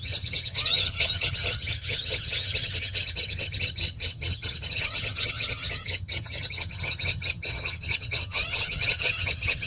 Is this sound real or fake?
fake